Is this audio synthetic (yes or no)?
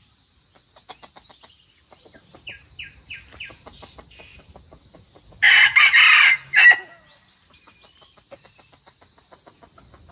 no